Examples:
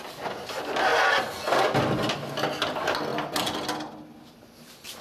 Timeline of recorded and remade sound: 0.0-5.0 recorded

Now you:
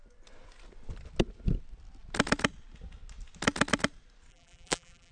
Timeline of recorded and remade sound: 0.0-4.3 recorded; 4.3-5.1 remade